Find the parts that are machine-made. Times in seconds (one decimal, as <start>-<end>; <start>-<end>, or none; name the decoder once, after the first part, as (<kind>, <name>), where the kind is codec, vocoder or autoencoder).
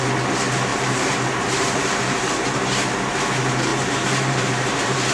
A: 0.7-3.0 (vocoder, BigVGAN v2); 3.7-5.1